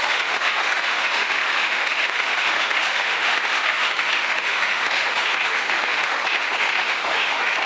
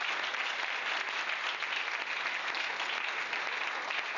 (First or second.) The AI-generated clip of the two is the first